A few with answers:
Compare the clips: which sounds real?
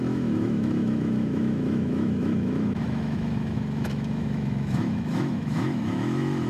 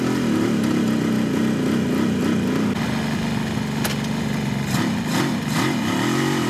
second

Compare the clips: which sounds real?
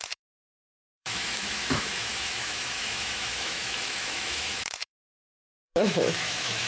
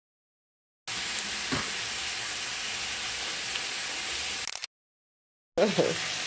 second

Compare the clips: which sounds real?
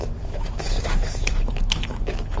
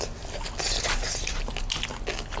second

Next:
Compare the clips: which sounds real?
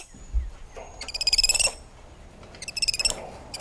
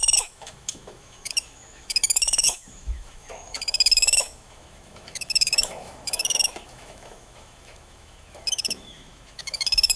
first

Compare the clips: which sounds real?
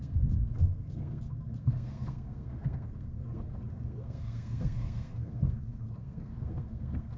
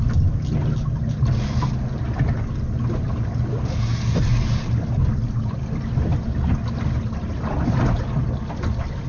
second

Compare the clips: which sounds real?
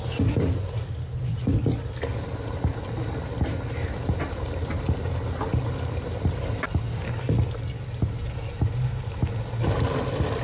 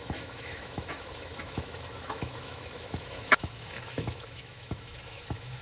first